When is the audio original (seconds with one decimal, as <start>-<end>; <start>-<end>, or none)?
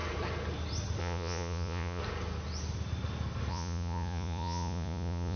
0.0-1.0; 2.0-3.5